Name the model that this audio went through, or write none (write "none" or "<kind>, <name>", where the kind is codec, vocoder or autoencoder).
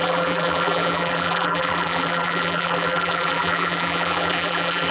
vocoder, BigVGAN v2